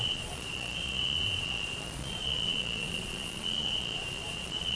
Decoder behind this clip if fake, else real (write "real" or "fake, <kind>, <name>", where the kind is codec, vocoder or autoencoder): fake, vocoder, Vocos